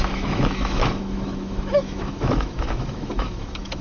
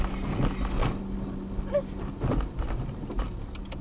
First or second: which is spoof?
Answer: first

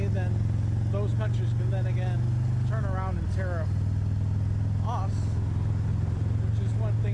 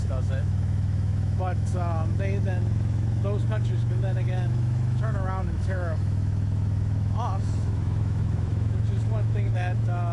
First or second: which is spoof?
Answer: second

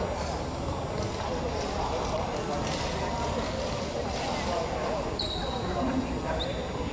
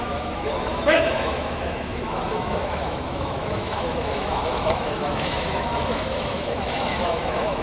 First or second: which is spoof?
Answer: second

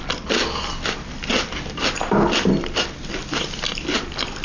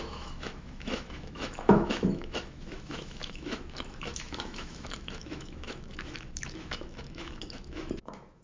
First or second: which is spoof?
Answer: second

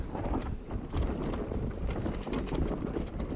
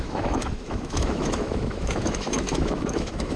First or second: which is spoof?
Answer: second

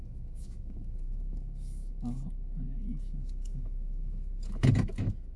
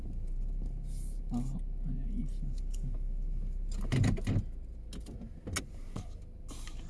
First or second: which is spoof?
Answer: first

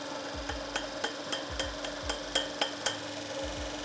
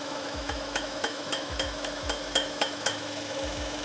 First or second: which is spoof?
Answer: second